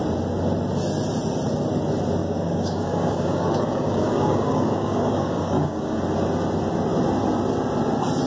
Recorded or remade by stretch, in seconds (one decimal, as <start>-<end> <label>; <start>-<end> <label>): 0.0-2.2 recorded; 2.2-6.0 remade; 6.0-8.3 recorded